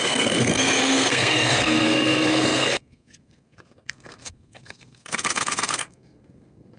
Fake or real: fake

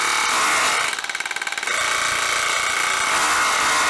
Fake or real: real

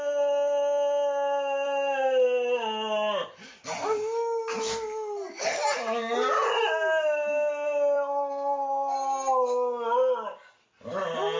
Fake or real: real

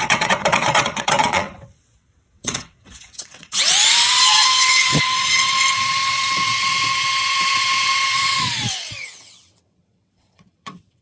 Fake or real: fake